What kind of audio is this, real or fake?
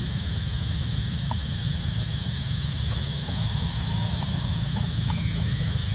fake